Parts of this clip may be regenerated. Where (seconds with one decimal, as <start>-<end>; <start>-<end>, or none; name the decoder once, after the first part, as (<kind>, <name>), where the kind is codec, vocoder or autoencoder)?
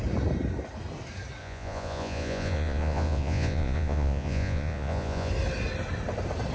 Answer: 1.4-5.3 (vocoder, Vocos)